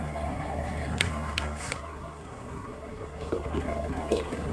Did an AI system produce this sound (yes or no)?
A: yes